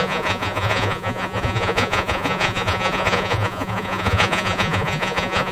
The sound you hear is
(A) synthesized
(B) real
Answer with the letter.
A